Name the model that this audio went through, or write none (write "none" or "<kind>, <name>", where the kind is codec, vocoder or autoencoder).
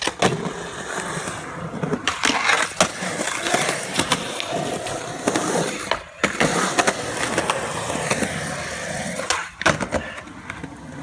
none